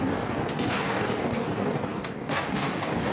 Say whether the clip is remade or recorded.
remade